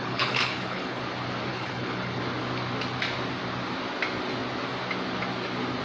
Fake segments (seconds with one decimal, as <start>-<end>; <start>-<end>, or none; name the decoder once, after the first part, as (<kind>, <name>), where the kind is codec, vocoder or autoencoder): 0.0-1.0 (codec, HILCodec); 1.5-2.2